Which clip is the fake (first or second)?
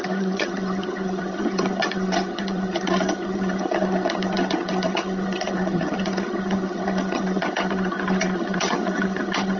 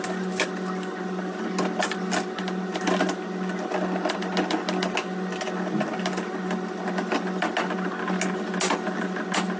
first